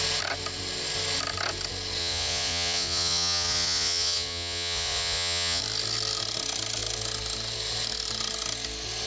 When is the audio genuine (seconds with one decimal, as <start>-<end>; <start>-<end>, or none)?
0.0-2.0; 5.6-9.1